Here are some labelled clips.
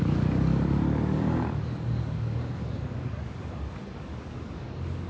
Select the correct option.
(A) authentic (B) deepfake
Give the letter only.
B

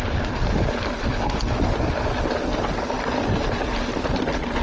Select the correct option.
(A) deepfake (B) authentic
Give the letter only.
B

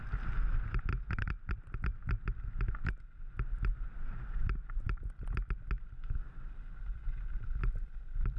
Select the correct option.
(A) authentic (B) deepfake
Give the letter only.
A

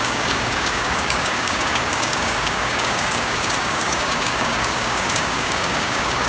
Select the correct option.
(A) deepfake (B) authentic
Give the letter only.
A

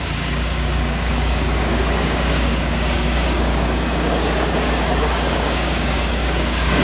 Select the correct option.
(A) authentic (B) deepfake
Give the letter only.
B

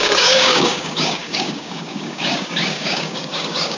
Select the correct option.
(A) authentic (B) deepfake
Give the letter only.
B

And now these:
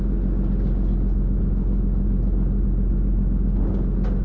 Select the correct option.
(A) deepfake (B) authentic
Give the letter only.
B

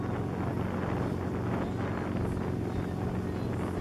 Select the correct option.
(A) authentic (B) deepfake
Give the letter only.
A